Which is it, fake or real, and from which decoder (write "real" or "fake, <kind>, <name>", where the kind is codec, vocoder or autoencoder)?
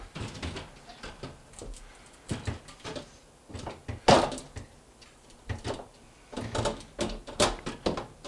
real